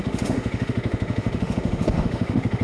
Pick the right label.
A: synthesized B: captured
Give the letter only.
A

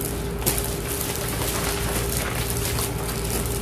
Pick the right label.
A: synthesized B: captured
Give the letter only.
B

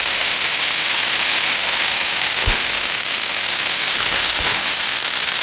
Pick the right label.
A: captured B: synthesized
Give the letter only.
B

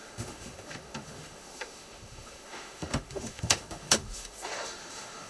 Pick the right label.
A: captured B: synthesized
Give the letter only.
B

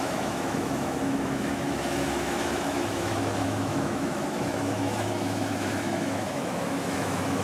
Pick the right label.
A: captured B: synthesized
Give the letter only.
B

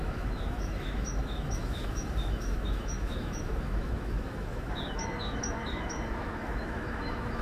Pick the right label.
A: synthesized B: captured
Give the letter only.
A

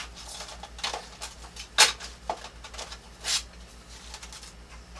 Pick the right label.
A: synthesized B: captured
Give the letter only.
B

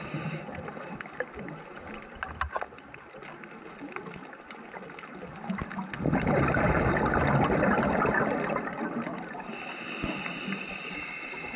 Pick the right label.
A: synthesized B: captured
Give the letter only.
B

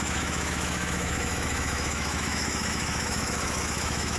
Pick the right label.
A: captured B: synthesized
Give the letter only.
B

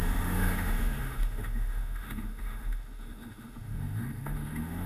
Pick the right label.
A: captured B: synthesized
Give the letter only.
B